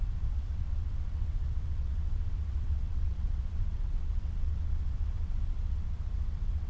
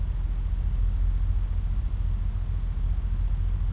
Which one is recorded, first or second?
second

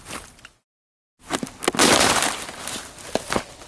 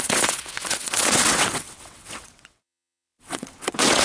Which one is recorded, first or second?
first